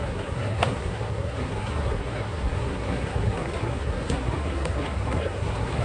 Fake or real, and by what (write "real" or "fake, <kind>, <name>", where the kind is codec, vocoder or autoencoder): fake, codec, SNAC